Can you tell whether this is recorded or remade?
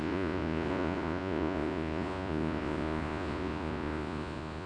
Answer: remade